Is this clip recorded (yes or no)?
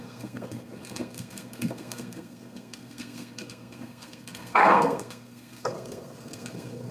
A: no